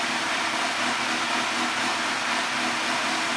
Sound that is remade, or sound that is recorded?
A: recorded